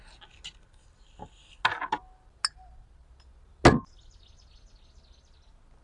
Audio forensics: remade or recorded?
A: recorded